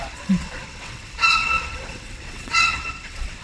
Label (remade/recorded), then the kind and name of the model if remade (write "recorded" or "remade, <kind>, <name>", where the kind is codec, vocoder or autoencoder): remade, vocoder, WaveNeXt